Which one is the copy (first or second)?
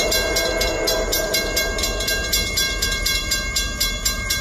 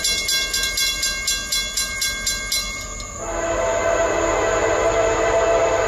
first